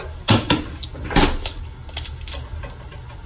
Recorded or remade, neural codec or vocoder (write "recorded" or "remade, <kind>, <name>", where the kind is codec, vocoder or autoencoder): recorded